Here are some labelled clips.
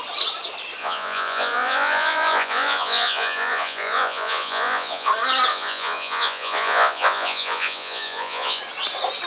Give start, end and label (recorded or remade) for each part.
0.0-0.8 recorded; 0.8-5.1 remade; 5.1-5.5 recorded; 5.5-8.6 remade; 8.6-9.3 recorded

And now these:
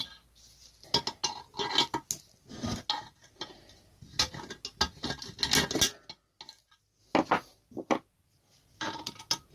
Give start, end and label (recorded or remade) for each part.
0.0-9.5 recorded

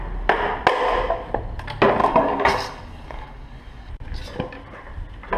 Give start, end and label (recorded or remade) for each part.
0.0-2.0 recorded; 2.0-3.9 remade; 3.9-5.4 recorded

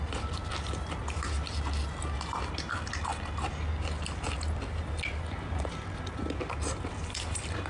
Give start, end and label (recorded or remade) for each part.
0.0-7.7 recorded

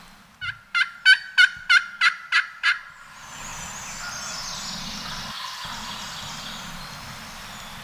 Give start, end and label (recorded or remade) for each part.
0.0-7.8 recorded

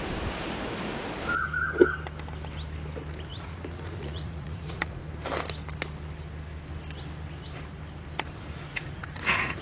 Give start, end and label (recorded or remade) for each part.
0.0-3.3 recorded; 3.3-5.0 remade; 5.0-8.7 recorded; 8.7-9.6 remade

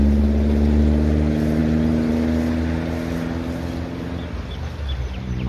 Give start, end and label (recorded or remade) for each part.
0.0-5.5 recorded